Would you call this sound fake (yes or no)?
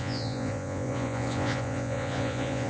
yes